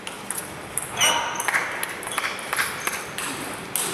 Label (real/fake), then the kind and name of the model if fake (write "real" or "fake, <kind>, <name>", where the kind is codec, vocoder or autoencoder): real